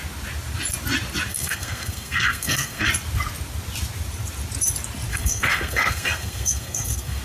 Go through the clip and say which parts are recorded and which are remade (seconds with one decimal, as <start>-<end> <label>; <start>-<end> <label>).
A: 0.0-1.3 recorded; 1.3-2.9 remade; 2.9-5.1 recorded; 5.1-7.2 remade